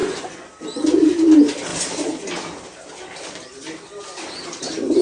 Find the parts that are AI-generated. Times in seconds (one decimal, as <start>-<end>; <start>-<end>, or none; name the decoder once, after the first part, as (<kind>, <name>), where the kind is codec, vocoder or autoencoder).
0.0-0.5 (vocoder, Vocos)